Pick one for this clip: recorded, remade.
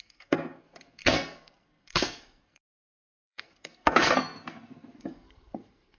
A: remade